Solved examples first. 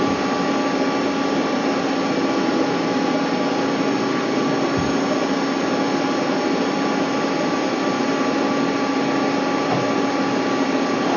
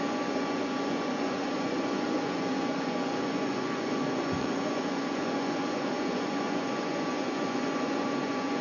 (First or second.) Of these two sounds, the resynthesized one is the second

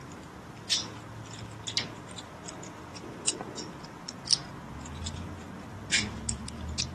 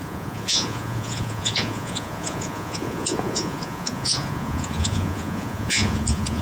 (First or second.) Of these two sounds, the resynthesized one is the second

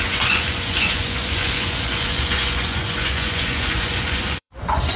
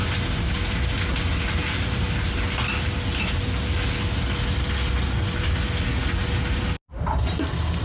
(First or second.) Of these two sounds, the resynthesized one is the first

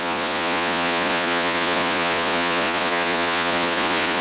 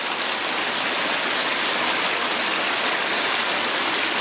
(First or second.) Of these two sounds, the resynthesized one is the first